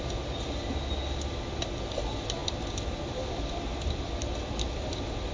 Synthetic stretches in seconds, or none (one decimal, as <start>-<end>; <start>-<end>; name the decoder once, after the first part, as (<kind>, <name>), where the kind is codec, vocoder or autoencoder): none